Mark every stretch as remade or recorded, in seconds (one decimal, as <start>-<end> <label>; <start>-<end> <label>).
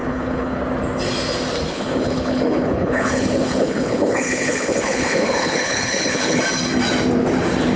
0.0-0.6 remade; 0.6-1.7 recorded; 1.7-6.4 remade; 6.4-7.8 recorded